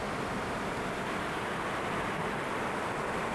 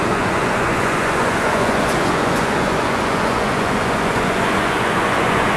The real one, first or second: first